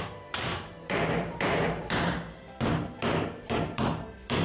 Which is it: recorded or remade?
remade